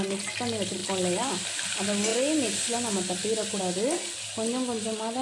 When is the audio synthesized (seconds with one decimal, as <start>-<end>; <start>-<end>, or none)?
none